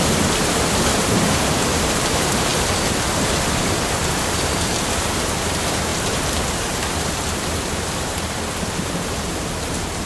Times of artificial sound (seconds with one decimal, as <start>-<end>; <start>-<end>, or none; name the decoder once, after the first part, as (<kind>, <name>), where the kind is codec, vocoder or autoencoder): 0.0-2.5 (vocoder, BigVGAN v2); 3.1-10.1